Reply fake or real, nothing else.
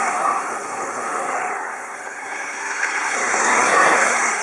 fake